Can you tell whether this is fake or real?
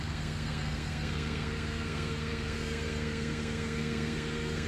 fake